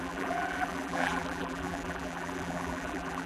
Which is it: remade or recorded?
remade